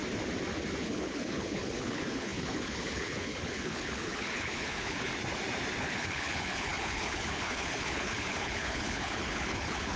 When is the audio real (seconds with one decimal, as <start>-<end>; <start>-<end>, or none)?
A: 0.0-0.8; 5.1-5.8